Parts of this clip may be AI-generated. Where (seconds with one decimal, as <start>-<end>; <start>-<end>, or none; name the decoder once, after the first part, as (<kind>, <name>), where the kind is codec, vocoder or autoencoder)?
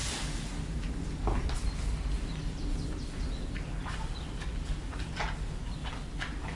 5.8-6.6 (vocoder, BigVGAN v2)